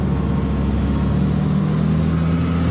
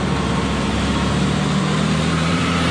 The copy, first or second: second